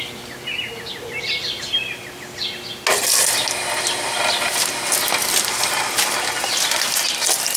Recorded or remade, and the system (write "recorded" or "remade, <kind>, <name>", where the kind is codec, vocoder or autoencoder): recorded